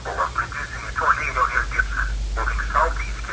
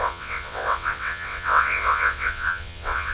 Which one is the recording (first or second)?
first